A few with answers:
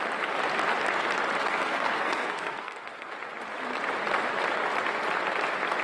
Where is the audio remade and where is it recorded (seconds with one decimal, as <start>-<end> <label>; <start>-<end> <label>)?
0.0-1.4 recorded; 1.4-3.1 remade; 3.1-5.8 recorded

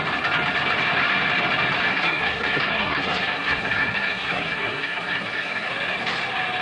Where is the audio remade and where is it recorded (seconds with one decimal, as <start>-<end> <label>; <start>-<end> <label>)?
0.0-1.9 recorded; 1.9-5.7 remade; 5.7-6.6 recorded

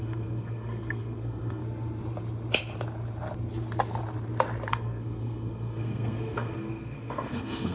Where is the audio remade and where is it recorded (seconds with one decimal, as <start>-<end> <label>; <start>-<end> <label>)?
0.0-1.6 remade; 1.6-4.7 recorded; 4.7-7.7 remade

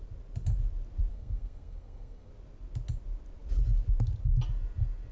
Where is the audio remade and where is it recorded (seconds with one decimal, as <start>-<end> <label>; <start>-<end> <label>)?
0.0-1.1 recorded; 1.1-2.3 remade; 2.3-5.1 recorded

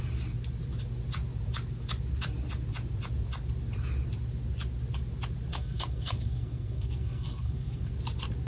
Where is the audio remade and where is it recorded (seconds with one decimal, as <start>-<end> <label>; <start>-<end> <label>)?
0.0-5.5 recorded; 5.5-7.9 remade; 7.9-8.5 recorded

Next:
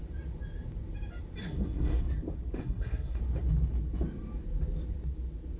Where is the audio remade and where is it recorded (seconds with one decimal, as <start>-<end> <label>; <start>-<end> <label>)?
0.0-1.4 recorded; 1.4-2.0 remade; 2.0-2.6 recorded; 2.6-3.2 remade; 3.2-5.6 recorded